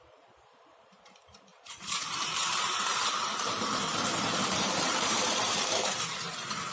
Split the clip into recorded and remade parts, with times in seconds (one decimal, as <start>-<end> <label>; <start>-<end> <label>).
0.0-6.7 remade